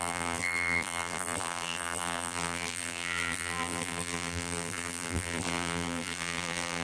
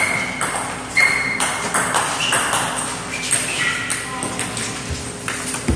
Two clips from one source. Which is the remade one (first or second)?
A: first